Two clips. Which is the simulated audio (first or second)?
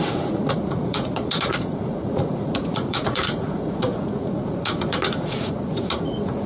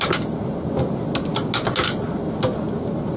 first